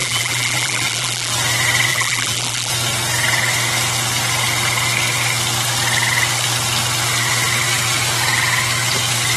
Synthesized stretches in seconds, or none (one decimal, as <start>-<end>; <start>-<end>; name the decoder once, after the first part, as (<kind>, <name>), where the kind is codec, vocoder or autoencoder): 0.0-1.3 (vocoder, BigVGAN v2); 1.9-2.7